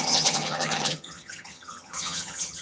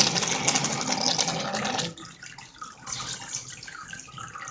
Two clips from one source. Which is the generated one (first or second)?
first